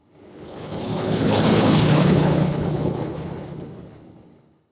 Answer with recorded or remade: remade